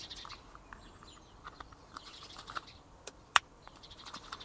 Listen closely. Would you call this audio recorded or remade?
remade